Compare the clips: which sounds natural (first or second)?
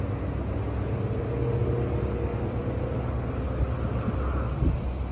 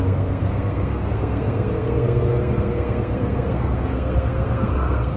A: first